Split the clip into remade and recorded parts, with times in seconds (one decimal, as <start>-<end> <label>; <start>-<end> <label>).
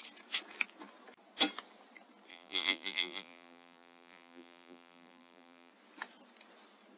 0.0-2.3 recorded; 2.3-5.7 remade; 5.7-7.0 recorded